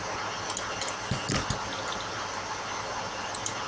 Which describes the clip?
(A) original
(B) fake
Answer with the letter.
A